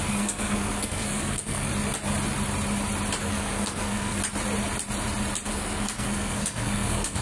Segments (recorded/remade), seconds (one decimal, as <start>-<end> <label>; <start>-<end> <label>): 0.0-1.7 remade; 1.7-3.2 recorded; 3.2-4.2 remade; 4.2-5.5 recorded; 5.5-7.2 remade